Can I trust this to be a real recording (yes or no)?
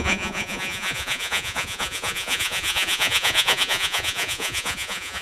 no